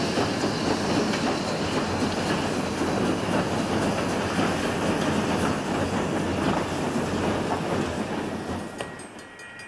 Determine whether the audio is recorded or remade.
recorded